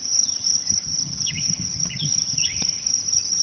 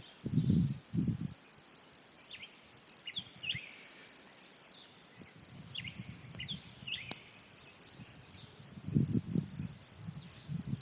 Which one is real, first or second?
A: second